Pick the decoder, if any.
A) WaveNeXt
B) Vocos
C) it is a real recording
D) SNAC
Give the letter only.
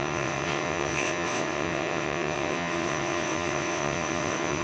A